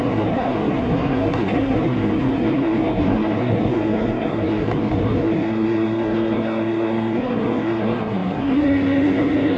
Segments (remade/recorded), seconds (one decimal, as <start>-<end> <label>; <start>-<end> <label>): 0.0-9.6 remade